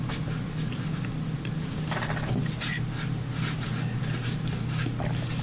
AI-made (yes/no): no